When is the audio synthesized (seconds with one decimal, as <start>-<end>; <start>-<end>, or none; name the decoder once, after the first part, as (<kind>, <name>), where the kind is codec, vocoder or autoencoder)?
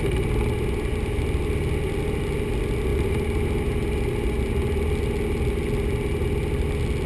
none